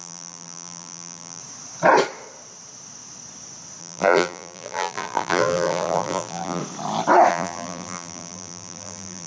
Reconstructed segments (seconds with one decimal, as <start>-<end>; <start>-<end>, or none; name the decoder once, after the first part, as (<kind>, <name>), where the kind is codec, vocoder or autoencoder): 0.0-1.4 (vocoder, BigVGAN v2); 3.8-6.6; 7.3-9.3